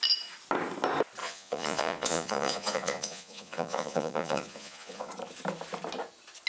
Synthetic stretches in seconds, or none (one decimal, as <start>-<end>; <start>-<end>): 1.2-5.1

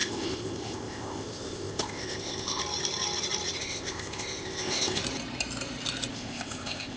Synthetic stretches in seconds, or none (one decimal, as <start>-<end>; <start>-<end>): 0.0-2.6; 3.6-5.0; 6.1-7.0